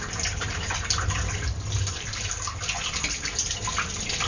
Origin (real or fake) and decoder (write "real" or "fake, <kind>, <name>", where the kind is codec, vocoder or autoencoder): real